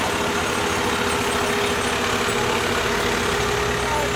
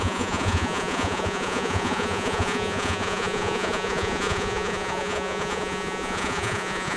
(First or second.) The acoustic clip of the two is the first